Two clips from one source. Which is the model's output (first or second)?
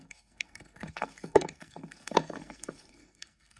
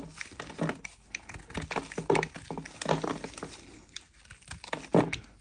first